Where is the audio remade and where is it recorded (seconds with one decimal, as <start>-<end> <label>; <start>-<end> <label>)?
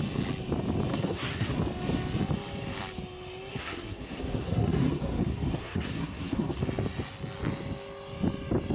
0.0-0.9 recorded; 0.9-1.6 remade; 1.6-3.5 recorded; 3.5-6.6 remade; 6.6-8.7 recorded